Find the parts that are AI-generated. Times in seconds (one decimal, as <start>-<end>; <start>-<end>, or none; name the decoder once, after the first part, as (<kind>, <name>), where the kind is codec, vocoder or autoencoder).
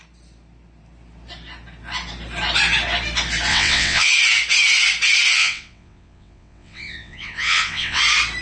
3.5-4.1 (vocoder, WaveNeXt); 5.4-8.0